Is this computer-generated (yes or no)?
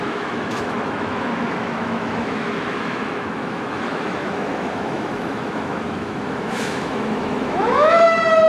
yes